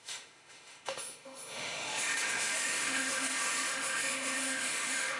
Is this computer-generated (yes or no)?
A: yes